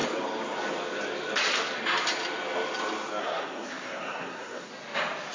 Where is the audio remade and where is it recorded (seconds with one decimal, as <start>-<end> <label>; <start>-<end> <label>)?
0.0-3.2 recorded; 3.2-4.7 remade; 4.7-5.3 recorded